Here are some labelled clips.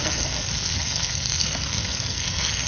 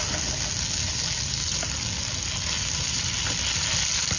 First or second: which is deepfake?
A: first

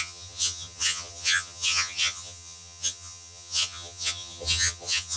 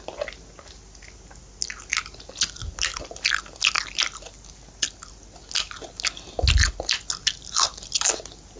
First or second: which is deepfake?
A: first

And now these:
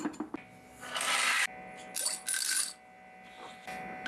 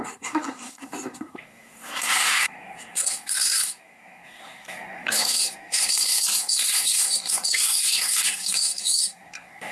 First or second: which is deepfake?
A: second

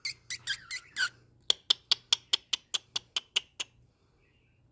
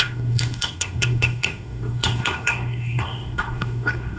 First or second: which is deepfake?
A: second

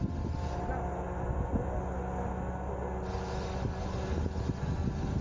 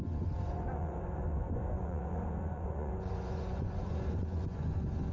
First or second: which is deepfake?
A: second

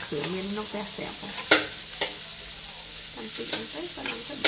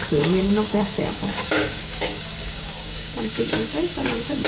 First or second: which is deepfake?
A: second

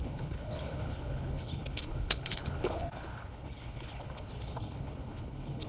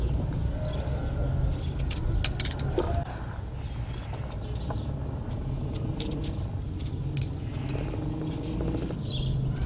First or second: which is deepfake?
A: first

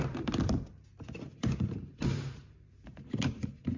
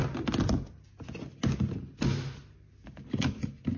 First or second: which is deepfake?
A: first